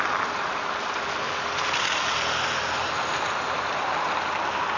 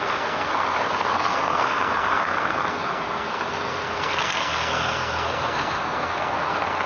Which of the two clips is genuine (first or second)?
first